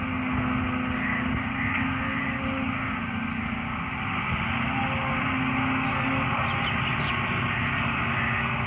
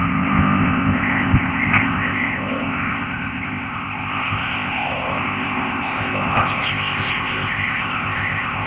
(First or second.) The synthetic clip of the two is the second